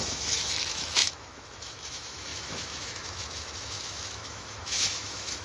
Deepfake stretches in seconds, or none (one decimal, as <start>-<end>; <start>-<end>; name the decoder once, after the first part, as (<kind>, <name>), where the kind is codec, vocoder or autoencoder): 0.0-5.4 (autoencoder, DAC-VAE)